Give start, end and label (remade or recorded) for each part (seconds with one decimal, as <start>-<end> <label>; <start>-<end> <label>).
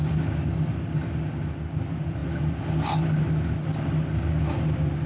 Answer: 0.0-5.1 recorded